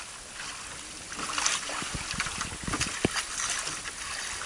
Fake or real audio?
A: real